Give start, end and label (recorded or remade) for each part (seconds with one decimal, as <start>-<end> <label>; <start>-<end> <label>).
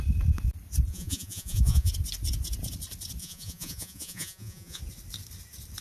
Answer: 0.0-0.9 recorded; 0.9-1.9 remade; 1.9-3.2 recorded; 3.2-4.8 remade; 4.8-5.8 recorded